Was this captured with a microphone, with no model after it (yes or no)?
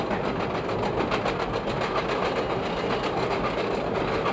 yes